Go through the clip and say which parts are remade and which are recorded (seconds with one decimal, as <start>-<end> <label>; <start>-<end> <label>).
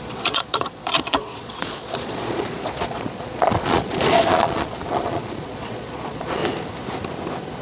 0.0-6.4 remade; 6.4-7.6 recorded